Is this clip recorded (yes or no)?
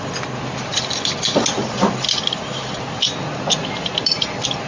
yes